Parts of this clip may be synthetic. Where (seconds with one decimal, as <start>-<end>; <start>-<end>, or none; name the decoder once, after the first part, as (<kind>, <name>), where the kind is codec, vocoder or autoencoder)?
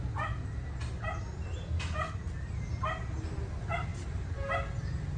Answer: 3.9-4.5 (vocoder, BigVGAN v2)